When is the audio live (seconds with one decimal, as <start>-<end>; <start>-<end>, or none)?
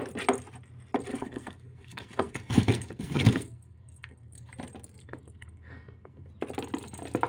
0.0-1.1; 4.5-5.0; 6.3-7.3